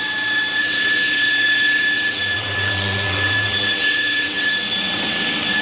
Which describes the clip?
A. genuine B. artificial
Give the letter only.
B